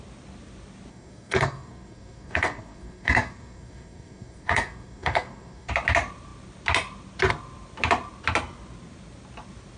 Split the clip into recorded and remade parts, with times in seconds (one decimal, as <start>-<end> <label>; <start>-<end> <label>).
0.0-0.9 recorded; 0.9-5.7 remade; 5.7-9.8 recorded